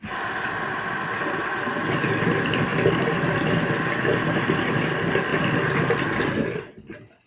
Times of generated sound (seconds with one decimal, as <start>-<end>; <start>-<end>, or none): none